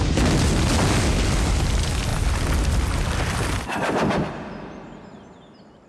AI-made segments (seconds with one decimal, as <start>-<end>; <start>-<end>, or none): none